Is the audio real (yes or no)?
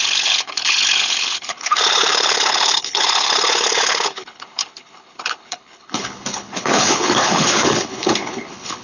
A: no